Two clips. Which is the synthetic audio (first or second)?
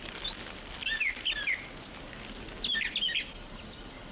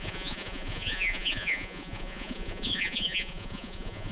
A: second